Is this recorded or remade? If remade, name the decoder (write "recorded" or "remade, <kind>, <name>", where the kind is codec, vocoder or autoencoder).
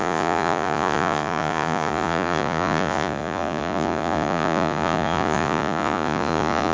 remade, vocoder, Vocos